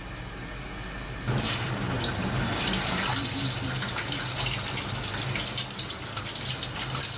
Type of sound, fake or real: real